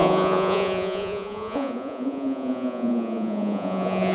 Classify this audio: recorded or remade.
remade